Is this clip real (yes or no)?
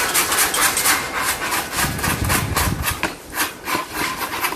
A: no